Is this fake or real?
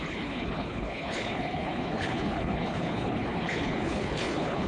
fake